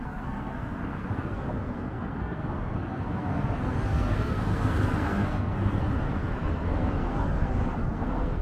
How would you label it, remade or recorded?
remade